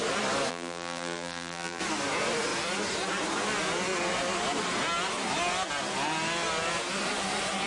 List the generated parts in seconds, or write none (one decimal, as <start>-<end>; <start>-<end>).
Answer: 0.5-1.8